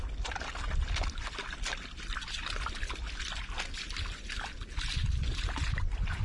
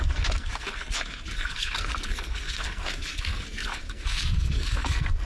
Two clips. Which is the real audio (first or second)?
first